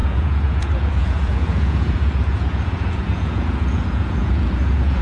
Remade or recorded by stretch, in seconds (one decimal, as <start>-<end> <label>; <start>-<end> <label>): 0.0-5.0 remade